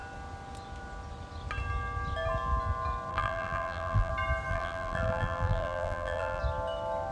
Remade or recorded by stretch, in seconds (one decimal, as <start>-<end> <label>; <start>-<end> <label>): 0.0-3.1 recorded; 3.1-4.1 remade; 4.1-4.5 recorded; 4.5-6.4 remade; 6.4-7.1 recorded